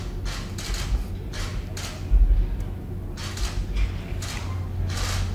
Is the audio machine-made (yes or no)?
no